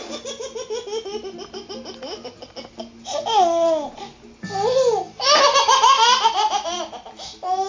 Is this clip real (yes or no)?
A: yes